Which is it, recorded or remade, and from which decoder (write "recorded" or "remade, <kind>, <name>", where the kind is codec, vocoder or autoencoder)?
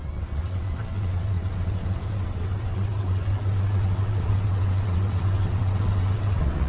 remade, vocoder, WaveNeXt